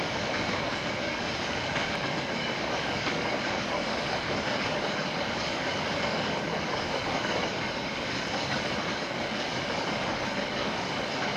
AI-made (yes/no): yes